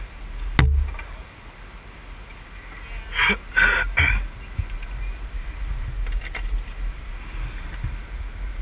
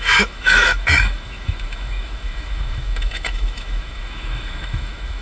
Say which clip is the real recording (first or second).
first